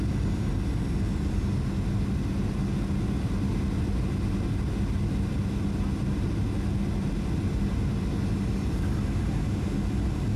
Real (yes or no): yes